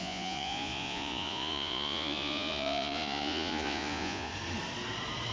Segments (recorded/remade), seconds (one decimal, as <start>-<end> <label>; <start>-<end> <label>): 0.0-4.3 remade; 4.3-5.3 recorded